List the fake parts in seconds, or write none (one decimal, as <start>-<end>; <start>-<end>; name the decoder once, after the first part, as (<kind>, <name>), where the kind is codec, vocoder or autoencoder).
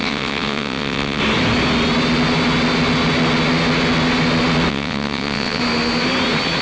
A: 0.0-1.2 (vocoder, WaveNeXt); 4.7-5.6